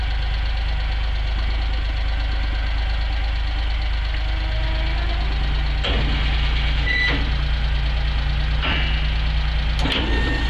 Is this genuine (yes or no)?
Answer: yes